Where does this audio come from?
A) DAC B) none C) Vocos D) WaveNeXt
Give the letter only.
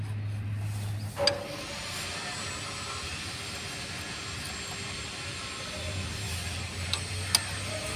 B